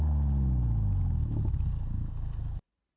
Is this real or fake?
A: real